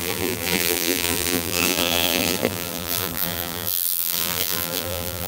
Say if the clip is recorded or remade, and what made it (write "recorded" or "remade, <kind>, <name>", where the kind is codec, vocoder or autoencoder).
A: remade, vocoder, BigVGAN v2